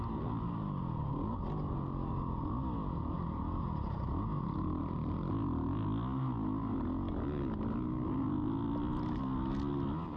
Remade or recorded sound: recorded